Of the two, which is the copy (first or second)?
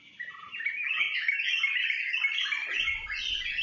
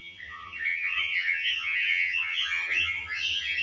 second